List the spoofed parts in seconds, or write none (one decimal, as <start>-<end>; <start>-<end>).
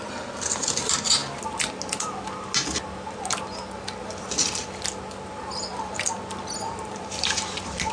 0.0-1.2; 5.2-7.9